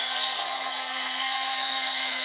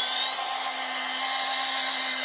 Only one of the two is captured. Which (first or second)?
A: second